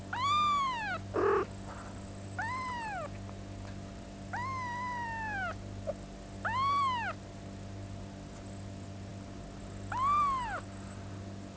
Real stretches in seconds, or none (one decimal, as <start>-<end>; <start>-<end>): 0.0-11.6